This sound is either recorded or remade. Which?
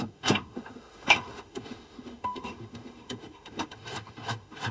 remade